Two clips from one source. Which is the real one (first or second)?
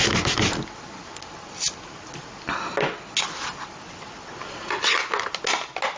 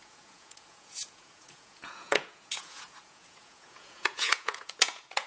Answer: first